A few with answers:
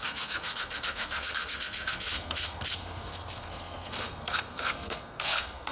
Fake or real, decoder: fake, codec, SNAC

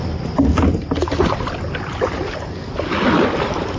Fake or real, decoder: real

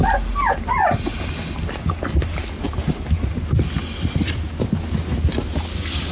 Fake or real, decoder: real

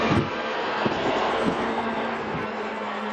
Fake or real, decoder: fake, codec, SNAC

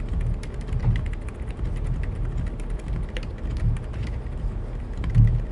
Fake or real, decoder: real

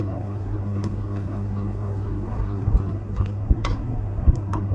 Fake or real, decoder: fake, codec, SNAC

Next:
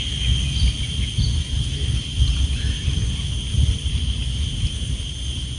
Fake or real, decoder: real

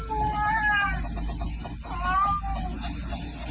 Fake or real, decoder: real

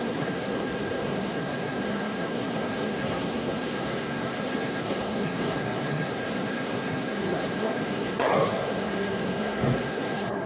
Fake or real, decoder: fake, codec, SNAC